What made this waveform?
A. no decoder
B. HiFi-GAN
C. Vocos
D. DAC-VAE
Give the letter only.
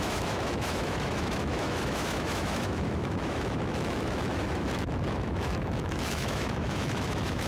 D